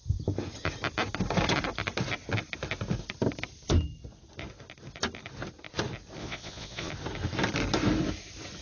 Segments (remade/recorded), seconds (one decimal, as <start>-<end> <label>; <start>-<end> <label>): 0.0-6.2 recorded; 6.2-6.9 remade; 6.9-8.6 recorded